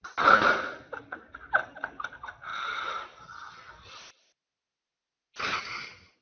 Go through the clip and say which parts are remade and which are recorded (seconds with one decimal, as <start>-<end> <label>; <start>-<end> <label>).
0.0-6.2 recorded